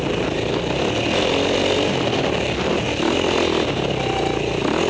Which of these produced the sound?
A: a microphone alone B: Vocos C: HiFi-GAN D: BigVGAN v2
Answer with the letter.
A